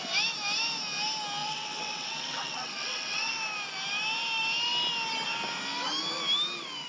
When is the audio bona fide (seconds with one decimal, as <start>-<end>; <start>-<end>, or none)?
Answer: 0.0-1.4; 3.3-6.9

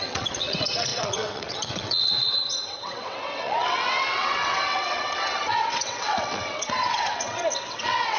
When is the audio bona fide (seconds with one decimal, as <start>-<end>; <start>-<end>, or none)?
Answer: none